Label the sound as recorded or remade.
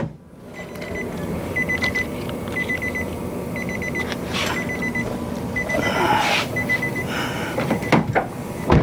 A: recorded